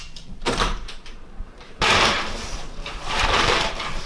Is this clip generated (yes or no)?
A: yes